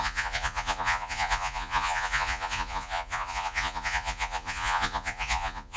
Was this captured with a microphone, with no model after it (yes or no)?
no